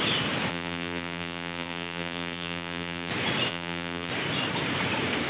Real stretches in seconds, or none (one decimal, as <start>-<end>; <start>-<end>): 0.0-0.5; 3.1-3.5; 4.1-5.3